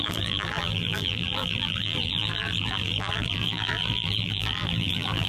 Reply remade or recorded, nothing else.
remade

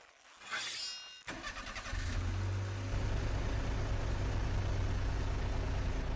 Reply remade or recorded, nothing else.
recorded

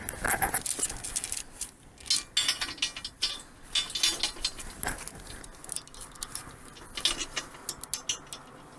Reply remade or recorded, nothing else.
recorded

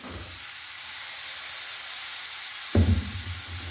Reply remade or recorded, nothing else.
recorded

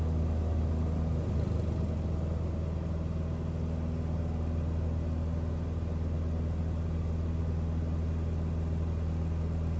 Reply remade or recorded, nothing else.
recorded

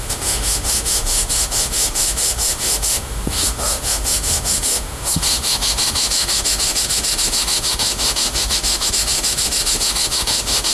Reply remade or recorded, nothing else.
remade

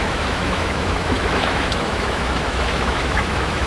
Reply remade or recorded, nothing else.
remade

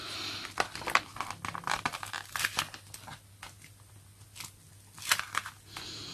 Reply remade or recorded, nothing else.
recorded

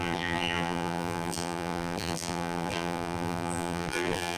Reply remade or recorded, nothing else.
remade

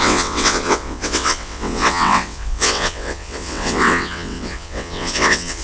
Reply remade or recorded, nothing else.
remade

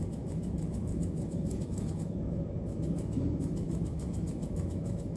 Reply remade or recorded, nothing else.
remade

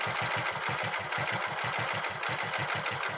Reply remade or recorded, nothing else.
recorded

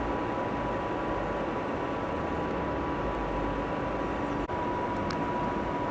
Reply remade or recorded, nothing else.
recorded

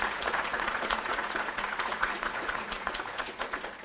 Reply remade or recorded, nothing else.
remade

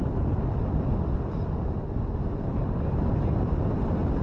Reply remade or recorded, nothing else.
recorded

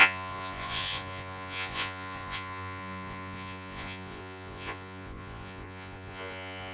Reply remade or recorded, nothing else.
remade